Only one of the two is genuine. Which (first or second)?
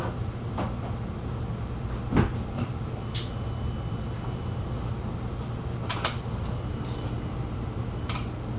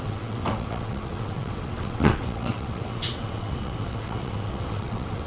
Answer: first